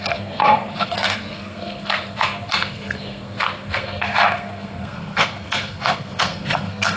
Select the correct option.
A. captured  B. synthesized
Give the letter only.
B